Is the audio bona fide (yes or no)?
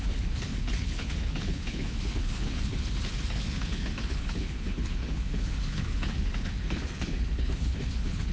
no